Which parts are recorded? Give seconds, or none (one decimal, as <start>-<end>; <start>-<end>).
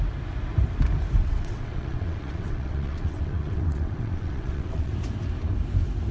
0.0-1.2; 4.9-6.1